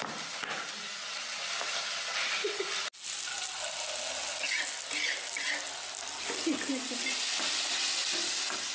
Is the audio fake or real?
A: real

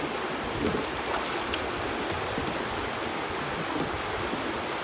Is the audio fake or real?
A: real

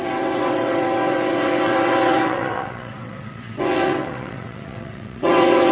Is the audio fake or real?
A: fake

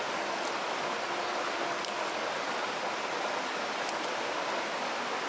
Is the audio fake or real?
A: real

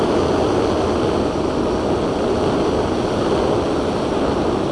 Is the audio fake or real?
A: real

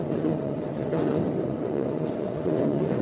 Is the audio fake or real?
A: fake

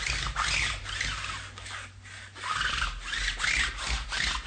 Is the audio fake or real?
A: real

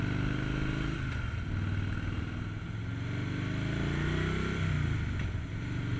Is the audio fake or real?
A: real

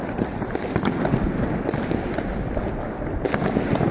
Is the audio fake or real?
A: real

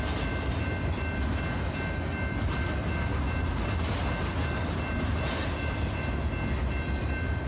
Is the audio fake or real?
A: real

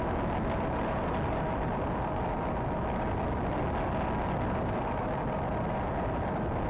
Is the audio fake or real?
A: real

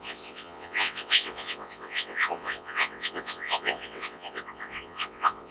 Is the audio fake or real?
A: fake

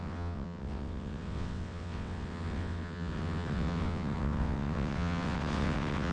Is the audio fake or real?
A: fake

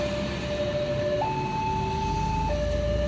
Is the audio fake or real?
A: real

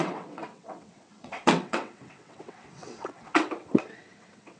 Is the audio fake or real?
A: fake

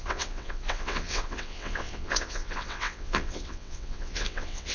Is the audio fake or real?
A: fake